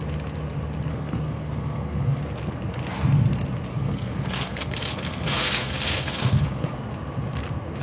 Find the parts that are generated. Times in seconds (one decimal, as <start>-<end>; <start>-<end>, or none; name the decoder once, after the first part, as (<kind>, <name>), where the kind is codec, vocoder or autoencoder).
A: 0.9-2.2 (codec, SNAC); 3.7-6.8